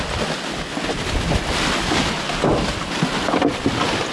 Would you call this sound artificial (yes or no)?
no